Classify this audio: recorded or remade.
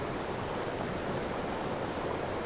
recorded